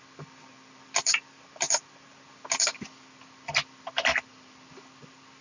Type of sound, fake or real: real